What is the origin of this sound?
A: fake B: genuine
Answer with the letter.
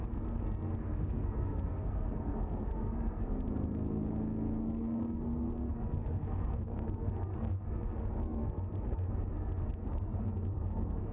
A